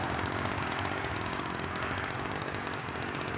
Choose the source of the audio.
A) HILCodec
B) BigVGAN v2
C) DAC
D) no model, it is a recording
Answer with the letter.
C